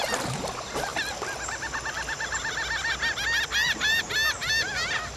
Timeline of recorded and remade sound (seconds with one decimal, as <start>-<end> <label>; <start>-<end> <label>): 0.0-5.2 recorded